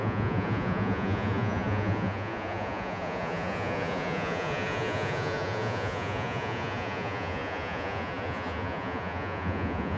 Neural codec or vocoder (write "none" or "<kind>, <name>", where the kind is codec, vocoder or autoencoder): vocoder, Vocos